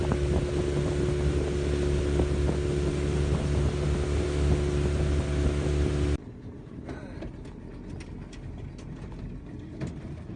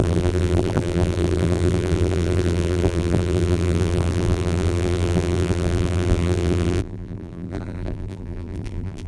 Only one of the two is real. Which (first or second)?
first